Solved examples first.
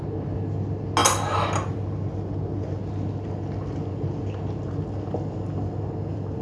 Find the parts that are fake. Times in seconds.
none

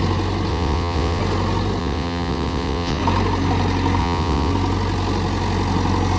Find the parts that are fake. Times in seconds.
0.5-1.2 (vocoder, WaveNeXt); 1.8-3.0; 4.0-4.5

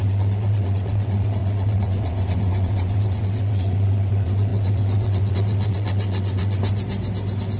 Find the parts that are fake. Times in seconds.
0.0-6.6 (vocoder, WaveNeXt)

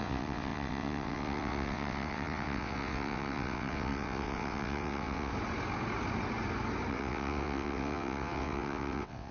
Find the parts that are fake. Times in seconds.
0.0-5.3 (vocoder, WaveNeXt); 6.9-9.3

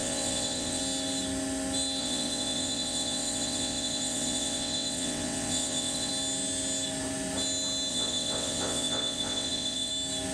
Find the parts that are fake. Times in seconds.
0.0-0.8 (vocoder, WaveNeXt); 2.0-6.1; 7.9-9.9

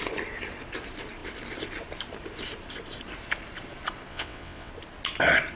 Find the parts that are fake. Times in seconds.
4.1-4.7 (vocoder, WaveNeXt)

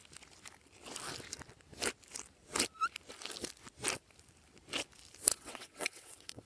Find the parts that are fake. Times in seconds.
5.3-6.5 (vocoder, WaveNeXt)